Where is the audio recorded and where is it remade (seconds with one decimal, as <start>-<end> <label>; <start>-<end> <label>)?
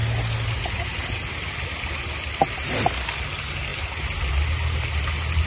0.0-5.5 recorded